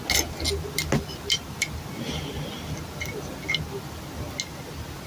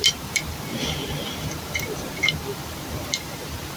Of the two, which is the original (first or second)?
first